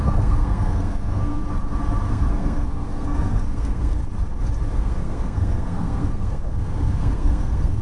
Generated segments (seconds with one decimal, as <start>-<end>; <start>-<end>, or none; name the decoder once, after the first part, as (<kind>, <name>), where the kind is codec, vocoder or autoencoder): 0.0-1.4 (codec, SNAC); 2.1-4.0; 4.7-7.8